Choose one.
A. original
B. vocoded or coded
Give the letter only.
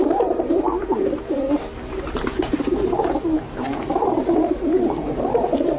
B